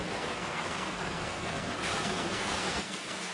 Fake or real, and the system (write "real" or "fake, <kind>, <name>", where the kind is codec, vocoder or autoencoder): fake, codec, SNAC